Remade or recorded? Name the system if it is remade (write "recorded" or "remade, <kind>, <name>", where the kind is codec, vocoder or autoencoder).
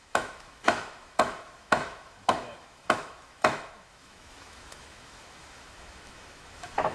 remade, autoencoder, DAC-VAE